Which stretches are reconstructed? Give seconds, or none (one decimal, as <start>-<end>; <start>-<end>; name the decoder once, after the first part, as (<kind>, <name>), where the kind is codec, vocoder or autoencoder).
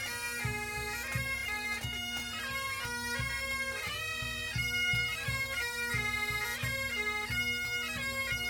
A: 1.4-2.4 (vocoder, BigVGAN v2); 4.9-5.9